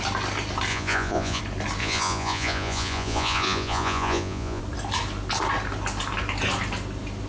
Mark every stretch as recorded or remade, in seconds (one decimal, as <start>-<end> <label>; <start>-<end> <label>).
0.0-0.7 recorded; 0.7-1.4 remade; 1.4-1.8 recorded; 1.8-4.6 remade; 4.6-7.3 recorded